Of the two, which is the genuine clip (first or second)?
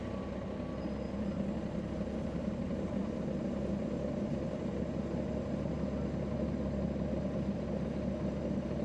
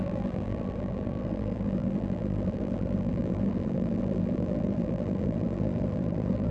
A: first